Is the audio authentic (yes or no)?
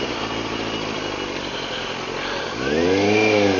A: yes